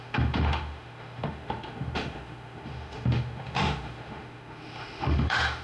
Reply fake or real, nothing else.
fake